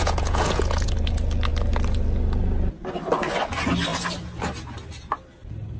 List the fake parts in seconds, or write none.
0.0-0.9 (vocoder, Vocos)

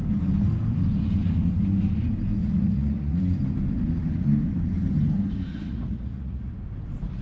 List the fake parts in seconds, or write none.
2.4-3.2 (vocoder, Vocos); 5.5-6.5